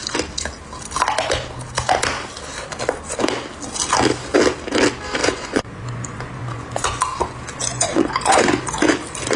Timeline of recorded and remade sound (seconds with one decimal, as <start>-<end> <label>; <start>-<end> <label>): 0.0-5.2 recorded; 5.2-7.0 remade; 7.0-7.6 recorded; 7.6-8.6 remade; 8.6-9.4 recorded

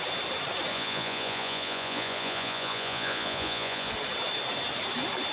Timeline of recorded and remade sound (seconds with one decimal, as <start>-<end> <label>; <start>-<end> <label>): 0.0-0.7 recorded; 0.7-3.9 remade; 3.9-5.3 recorded

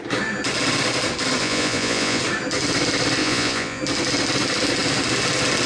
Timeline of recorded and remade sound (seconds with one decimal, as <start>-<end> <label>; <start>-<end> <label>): 0.0-1.4 recorded; 1.4-2.2 remade; 2.2-3.2 recorded; 3.2-3.8 remade; 3.8-5.7 recorded